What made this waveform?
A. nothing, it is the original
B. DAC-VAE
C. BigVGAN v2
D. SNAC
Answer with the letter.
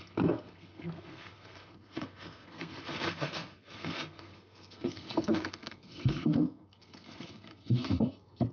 D